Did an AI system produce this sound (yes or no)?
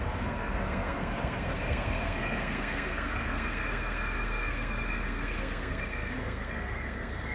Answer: yes